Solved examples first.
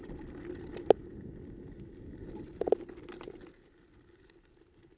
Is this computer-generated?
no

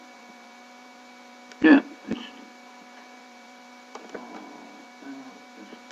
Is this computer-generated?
yes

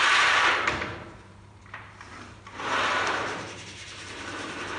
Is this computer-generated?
yes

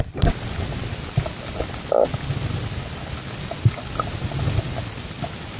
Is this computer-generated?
no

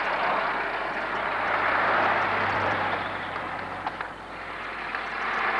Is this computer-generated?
no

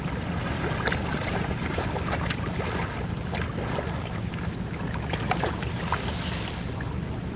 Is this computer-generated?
yes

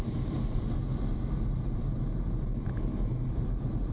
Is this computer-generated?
no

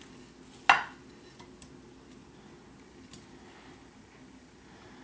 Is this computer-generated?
no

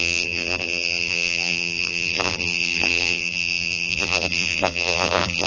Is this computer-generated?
yes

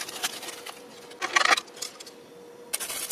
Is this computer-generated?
no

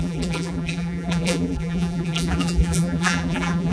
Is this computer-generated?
yes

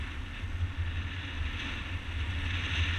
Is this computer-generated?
no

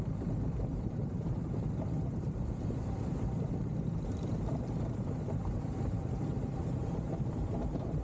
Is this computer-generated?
yes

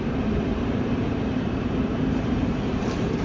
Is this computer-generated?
yes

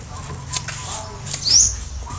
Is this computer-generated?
no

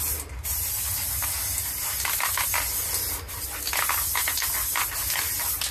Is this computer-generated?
no